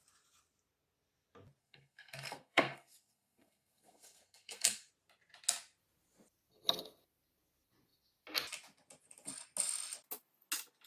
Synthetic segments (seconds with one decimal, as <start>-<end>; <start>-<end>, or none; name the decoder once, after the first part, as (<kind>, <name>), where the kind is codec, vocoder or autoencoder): 1.6-4.9 (codec, SNAC)